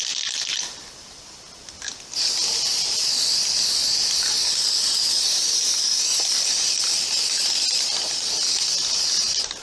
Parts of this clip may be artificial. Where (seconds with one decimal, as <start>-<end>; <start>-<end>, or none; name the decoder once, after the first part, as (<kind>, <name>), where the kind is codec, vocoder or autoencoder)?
3.8-8.5 (vocoder, BigVGAN v2)